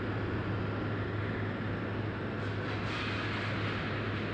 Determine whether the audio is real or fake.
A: real